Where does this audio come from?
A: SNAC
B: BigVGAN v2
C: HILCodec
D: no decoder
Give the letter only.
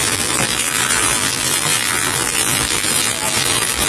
B